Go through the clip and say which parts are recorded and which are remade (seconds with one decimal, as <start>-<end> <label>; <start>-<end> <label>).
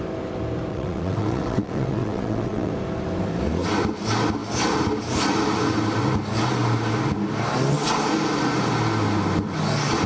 0.0-0.7 recorded; 0.7-2.7 remade; 2.7-10.1 recorded